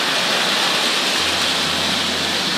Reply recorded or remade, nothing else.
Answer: recorded